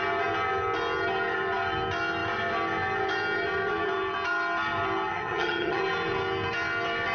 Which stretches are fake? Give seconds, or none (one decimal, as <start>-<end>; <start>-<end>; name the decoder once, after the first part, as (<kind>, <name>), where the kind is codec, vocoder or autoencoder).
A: 5.1-5.8 (vocoder, HiFi-GAN)